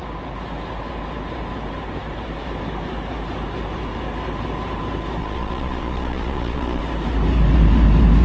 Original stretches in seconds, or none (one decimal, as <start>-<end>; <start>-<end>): 0.0-5.2; 6.8-8.2